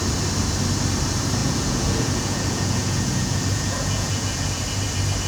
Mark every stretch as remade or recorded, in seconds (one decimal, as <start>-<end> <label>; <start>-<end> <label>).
0.0-1.4 recorded; 1.4-4.6 remade; 4.6-5.3 recorded